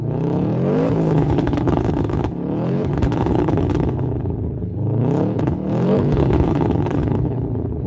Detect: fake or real fake